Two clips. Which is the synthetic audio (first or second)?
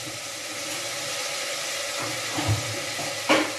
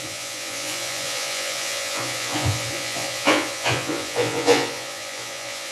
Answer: second